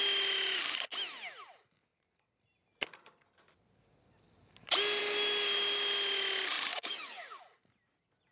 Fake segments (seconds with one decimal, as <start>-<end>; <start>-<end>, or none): 6.7-7.4